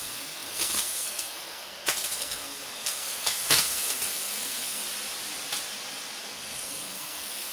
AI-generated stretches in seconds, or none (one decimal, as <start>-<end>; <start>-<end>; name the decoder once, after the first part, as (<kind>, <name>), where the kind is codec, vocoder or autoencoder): 0.0-4.8 (codec, SNAC); 6.2-7.5